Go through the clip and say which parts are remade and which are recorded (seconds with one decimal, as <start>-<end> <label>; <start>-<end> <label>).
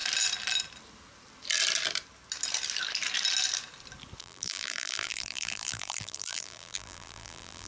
0.0-4.2 recorded; 4.2-7.7 remade